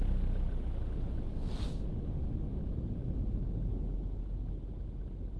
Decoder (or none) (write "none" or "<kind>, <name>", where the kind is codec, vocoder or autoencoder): none